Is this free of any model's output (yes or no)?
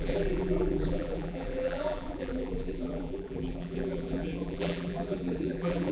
no